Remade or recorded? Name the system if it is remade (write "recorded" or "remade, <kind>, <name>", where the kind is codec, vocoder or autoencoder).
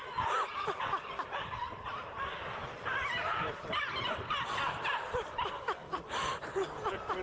recorded